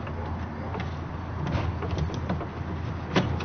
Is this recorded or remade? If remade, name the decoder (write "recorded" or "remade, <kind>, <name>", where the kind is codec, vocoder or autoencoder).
recorded